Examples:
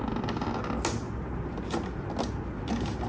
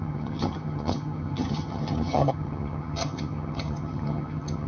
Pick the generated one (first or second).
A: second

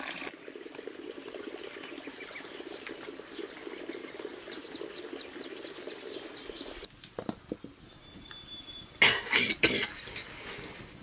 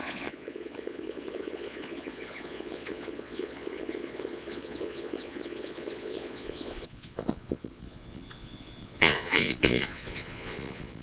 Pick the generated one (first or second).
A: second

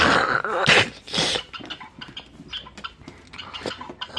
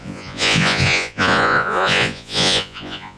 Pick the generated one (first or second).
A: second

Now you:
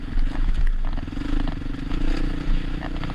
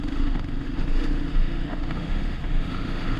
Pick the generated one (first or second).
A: second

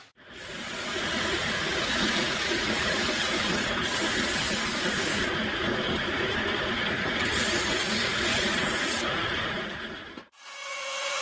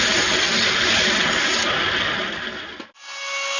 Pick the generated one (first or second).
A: first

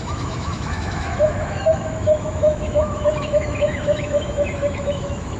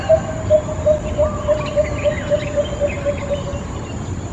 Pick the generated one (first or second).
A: first